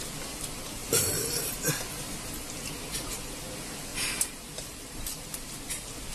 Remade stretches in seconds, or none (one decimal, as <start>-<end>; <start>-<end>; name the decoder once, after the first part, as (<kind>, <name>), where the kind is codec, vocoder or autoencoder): 0.8-1.7 (vocoder, BigVGAN v2); 3.9-5.2